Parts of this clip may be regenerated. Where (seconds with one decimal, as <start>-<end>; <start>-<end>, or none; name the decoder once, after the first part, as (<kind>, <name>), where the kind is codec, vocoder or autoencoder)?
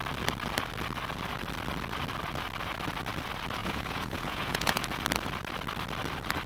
3.6-4.8 (vocoder, Vocos)